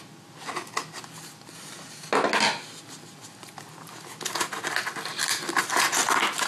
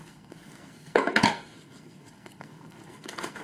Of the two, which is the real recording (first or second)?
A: first